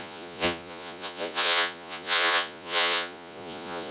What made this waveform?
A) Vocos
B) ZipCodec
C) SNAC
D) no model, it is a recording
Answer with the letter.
A